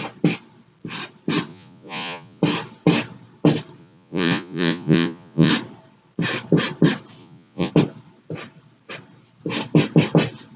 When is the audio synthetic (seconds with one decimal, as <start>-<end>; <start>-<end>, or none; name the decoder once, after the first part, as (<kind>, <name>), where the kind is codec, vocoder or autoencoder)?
1.5-2.4 (vocoder, Vocos); 3.8-5.5; 7.2-7.7